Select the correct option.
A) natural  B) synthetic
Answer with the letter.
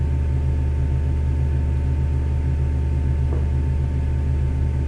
A